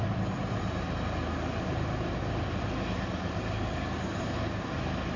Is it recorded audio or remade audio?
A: recorded